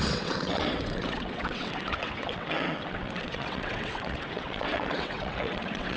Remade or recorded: remade